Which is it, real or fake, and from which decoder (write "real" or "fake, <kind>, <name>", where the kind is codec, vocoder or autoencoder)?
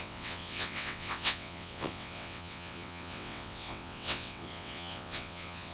fake, vocoder, WaveNeXt